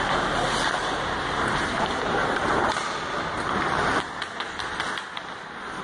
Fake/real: real